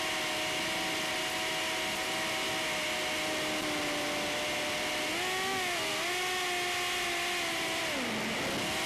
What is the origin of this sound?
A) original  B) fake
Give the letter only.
A